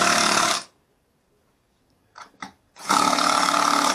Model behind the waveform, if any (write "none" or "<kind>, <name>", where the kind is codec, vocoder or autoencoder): codec, DAC